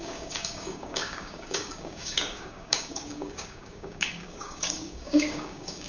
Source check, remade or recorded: remade